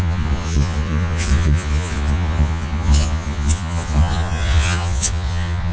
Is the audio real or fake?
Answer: fake